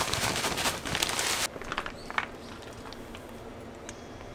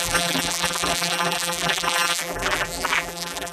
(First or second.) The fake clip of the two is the second